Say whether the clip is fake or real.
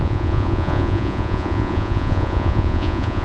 fake